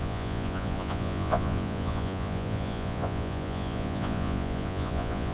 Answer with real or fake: fake